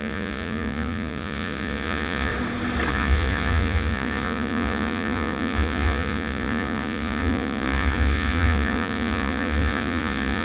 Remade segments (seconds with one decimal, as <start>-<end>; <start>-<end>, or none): 0.0-2.3; 2.9-10.4